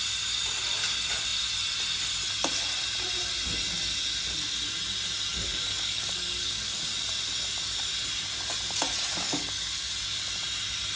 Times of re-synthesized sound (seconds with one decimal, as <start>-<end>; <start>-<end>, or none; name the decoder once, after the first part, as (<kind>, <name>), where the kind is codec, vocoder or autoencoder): 5.3-6.8 (codec, DAC); 9.1-9.9

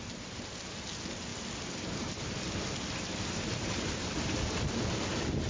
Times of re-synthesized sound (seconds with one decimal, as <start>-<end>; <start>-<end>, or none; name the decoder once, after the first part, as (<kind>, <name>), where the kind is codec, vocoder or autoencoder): none

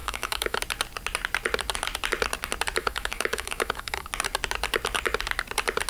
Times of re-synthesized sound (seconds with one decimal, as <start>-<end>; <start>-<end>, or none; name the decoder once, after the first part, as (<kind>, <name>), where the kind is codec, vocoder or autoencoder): 0.0-0.6 (autoencoder, DAC-VAE); 2.8-4.1

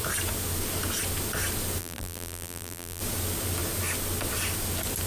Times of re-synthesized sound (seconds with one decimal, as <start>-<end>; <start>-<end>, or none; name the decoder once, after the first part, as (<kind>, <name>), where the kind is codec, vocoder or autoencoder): 1.8-3.0 (vocoder, BigVGAN v2)

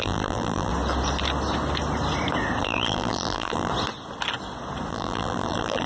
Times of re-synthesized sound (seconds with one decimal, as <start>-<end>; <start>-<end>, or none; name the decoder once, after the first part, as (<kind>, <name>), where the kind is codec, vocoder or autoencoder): 0.0-0.7 (vocoder, BigVGAN v2); 2.6-3.7; 4.9-5.9

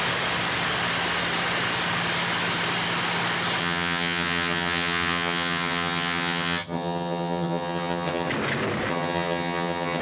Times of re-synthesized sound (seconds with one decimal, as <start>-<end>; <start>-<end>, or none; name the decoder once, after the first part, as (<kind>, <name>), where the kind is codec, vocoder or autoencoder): 3.6-8.3 (vocoder, HiFi-GAN); 8.9-10.0

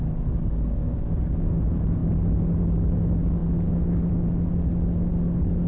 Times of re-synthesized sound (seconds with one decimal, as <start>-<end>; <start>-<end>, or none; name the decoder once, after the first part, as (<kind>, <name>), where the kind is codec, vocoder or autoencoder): 0.8-1.6 (codec, DAC)